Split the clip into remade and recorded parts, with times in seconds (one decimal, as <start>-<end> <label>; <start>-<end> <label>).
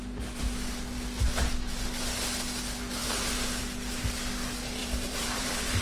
0.0-4.8 recorded; 4.8-5.8 remade